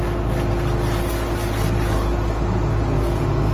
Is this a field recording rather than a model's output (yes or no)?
yes